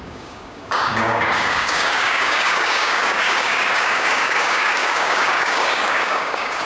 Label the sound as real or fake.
fake